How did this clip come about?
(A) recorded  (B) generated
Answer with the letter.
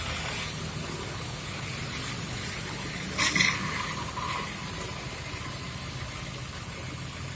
A